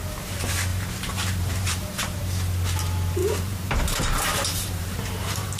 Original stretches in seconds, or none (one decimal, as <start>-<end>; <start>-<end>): 0.0-0.7; 2.2-3.2